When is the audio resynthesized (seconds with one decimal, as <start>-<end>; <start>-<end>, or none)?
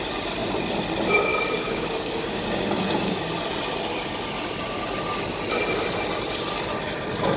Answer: 1.3-3.3